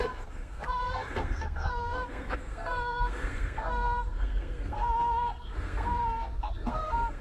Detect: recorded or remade remade